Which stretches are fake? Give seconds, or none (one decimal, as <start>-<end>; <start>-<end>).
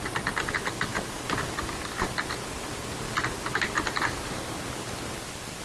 none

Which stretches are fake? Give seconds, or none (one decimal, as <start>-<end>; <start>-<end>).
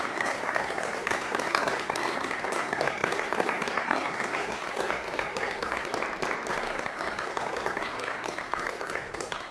0.0-5.9; 6.5-9.5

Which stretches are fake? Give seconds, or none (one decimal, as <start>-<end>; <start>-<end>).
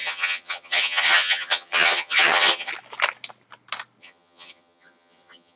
0.0-2.7; 4.0-5.6